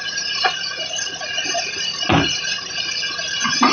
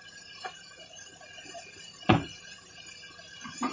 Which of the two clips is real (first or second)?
first